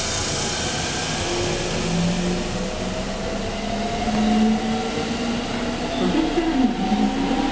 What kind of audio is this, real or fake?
real